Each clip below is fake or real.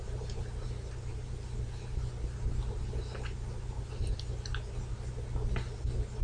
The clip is real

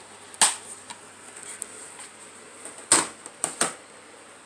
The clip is real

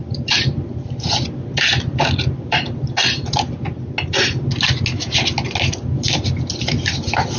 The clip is real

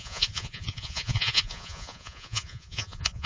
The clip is fake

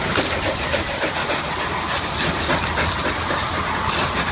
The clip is real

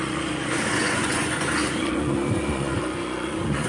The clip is fake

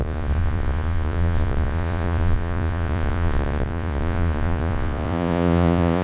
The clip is fake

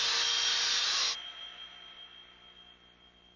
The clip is real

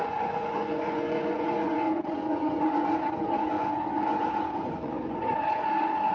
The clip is fake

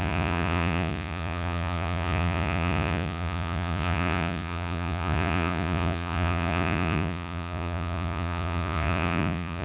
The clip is fake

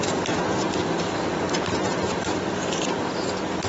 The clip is real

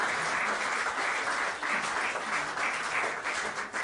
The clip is real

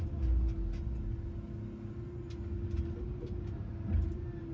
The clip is real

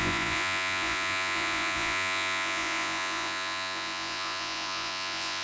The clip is fake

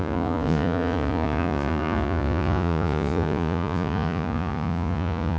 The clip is fake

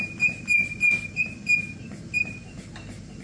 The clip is real